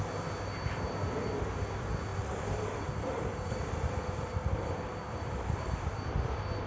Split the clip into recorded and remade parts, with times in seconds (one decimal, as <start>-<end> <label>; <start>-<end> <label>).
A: 0.0-2.1 recorded; 2.1-6.0 remade; 6.0-6.7 recorded